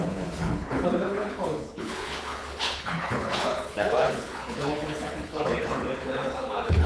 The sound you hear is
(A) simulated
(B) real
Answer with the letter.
A